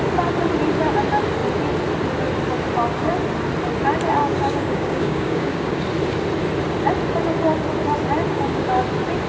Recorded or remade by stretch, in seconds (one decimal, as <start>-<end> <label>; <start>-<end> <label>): 0.0-4.2 recorded; 4.2-5.8 remade; 5.8-8.3 recorded; 8.3-8.8 remade; 8.8-9.3 recorded